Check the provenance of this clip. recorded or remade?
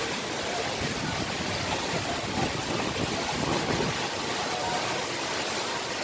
recorded